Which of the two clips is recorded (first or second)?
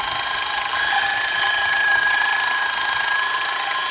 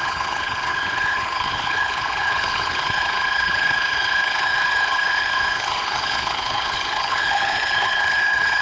first